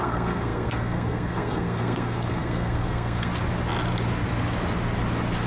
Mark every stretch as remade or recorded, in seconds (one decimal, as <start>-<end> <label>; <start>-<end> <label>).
0.0-3.3 remade; 3.3-5.5 recorded